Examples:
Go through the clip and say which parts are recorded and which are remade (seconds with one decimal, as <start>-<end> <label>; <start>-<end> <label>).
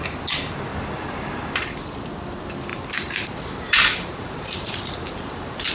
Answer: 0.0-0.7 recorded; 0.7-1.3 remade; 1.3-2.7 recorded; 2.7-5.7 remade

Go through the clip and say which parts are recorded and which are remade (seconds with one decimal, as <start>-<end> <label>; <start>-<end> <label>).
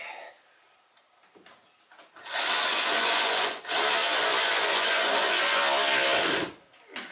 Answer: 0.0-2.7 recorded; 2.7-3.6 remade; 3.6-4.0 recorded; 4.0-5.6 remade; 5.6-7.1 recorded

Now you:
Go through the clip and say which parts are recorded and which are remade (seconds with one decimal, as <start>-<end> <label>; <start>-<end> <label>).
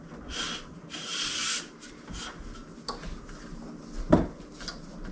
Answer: 0.0-5.1 recorded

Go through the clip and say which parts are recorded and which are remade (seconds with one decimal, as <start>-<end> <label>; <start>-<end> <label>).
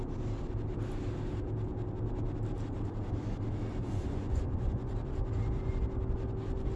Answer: 0.0-3.8 recorded; 3.8-4.9 remade; 4.9-6.8 recorded